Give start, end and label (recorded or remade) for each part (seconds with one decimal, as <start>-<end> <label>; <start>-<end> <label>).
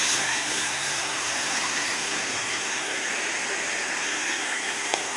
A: 0.0-3.1 remade; 3.1-4.0 recorded; 4.0-5.2 remade